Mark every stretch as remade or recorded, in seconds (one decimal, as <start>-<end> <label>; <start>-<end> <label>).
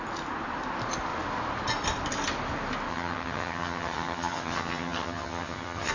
0.0-2.9 recorded; 2.9-5.9 remade